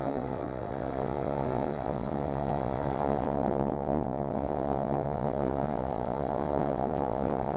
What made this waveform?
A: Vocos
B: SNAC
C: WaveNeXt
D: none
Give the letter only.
C